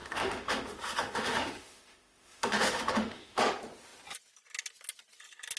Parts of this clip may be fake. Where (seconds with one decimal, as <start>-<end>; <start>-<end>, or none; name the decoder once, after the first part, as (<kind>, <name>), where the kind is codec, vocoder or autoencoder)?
0.0-3.4 (autoencoder, DAC-VAE)